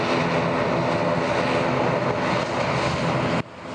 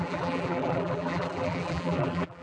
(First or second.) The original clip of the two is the first